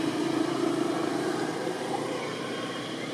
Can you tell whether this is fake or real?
fake